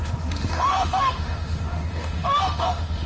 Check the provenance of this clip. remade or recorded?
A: remade